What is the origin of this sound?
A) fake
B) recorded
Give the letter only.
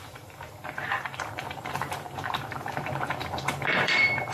A